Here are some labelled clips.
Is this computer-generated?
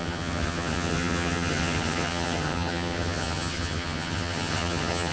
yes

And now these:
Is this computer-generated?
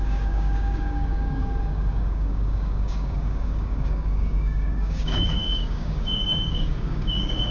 yes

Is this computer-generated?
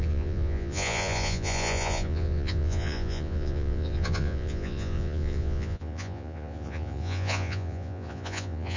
yes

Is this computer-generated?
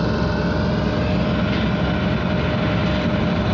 no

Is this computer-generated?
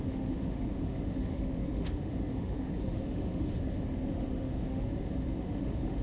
yes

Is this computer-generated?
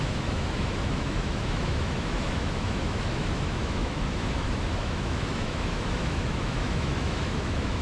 yes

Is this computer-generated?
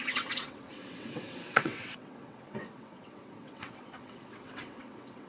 yes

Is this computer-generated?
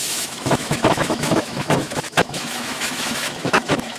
yes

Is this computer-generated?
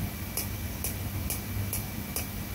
no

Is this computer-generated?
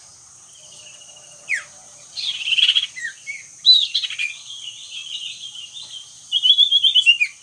no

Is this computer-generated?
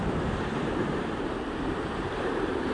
yes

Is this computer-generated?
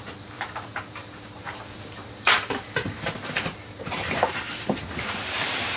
yes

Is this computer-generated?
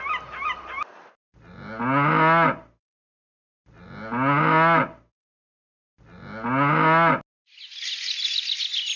no